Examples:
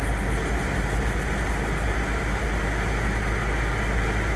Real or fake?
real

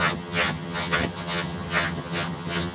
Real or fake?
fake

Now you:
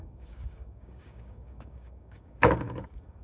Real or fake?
fake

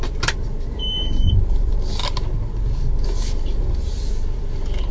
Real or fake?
fake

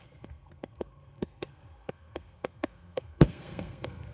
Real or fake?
fake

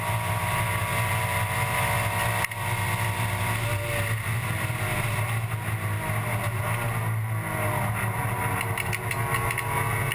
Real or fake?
real